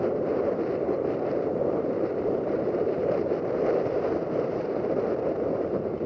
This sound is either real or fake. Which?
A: fake